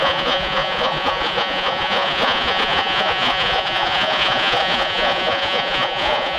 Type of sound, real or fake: fake